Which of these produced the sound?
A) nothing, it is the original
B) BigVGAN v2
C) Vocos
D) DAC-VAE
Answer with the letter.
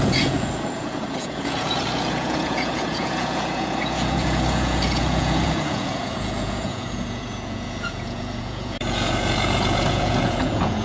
C